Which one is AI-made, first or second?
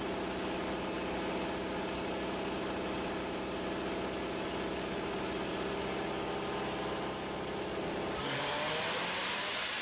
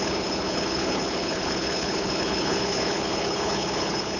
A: second